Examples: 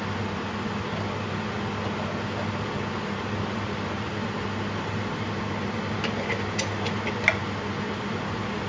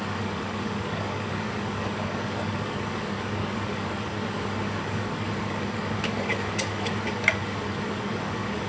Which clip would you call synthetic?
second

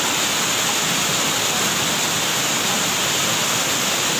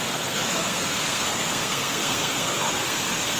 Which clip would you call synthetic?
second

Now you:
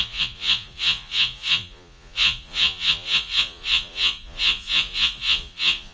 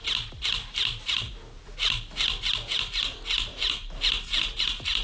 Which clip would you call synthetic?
first